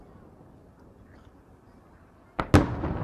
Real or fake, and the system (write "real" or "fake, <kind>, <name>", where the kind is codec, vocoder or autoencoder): real